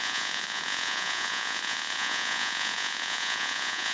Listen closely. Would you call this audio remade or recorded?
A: remade